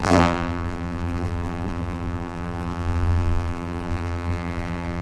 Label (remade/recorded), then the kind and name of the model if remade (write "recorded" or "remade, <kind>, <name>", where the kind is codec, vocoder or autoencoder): remade, vocoder, BigVGAN v2